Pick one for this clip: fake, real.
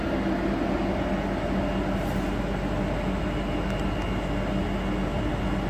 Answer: real